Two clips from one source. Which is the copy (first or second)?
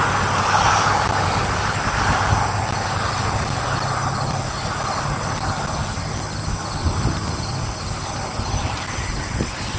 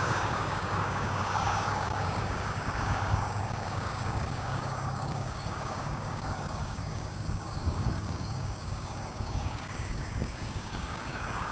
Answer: second